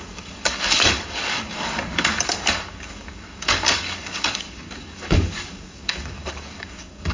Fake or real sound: fake